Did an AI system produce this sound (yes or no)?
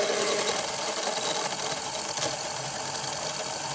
no